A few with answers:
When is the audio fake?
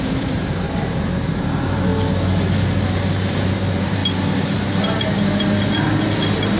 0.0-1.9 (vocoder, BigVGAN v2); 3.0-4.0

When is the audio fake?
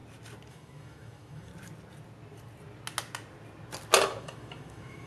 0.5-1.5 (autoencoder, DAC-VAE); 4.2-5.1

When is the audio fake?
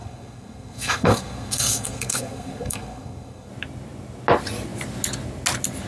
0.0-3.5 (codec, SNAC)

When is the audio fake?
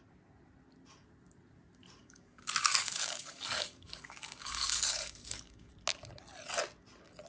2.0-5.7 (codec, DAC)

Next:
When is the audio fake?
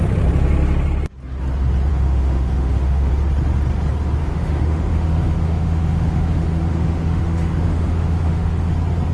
1.9-3.1 (autoencoder, DAC-VAE); 4.2-8.7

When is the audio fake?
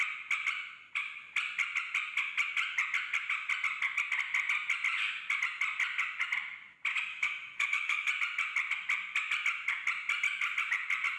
7.1-8.1 (autoencoder, DAC-VAE)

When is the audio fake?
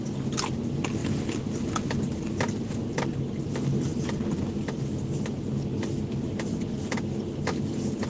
none